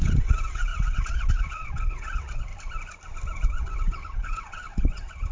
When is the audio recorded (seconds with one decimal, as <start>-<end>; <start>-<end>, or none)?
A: 2.5-3.6